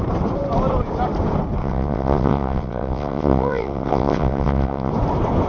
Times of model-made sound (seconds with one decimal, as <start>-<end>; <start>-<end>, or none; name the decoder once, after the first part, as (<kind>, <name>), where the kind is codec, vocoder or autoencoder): 1.6-4.9 (vocoder, WaveNeXt)